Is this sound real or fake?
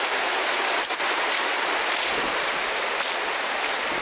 real